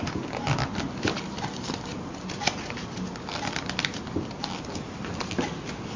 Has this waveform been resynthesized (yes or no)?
no